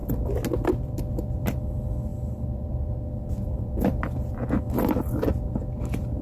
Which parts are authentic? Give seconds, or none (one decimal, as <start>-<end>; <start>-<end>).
0.0-2.1; 5.0-6.2